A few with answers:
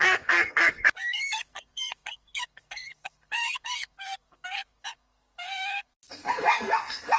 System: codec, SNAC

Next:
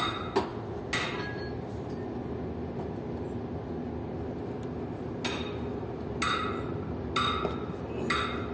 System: none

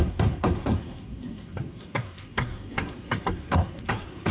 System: codec, SNAC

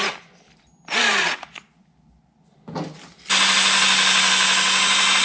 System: none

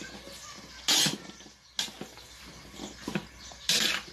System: none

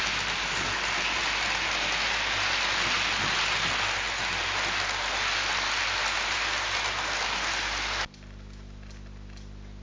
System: none